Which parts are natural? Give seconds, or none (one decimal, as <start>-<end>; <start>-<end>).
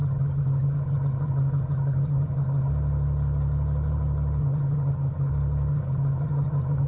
2.7-4.4; 5.3-5.7